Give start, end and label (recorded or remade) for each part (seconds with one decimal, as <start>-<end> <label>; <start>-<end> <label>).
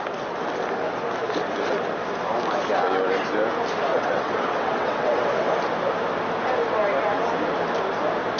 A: 0.0-3.9 recorded; 3.9-5.5 remade; 5.5-8.4 recorded